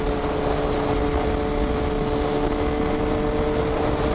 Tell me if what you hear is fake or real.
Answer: real